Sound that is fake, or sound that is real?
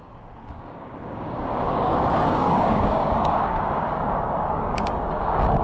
fake